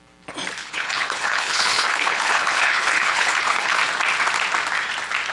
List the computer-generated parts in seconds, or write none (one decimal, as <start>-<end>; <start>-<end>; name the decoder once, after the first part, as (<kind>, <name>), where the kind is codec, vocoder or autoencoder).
0.6-3.8 (codec, HILCodec)